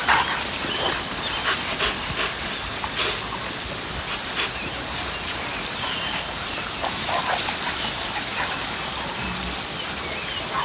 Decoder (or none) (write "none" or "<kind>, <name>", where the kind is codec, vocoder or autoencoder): none